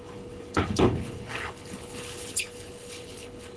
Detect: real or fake fake